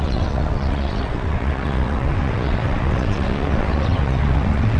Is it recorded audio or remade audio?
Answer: remade